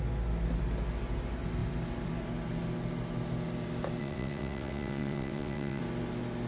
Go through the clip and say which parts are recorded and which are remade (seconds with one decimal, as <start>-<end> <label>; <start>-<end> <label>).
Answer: 0.0-4.0 recorded; 4.0-5.8 remade; 5.8-6.5 recorded